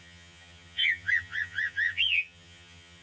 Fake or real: fake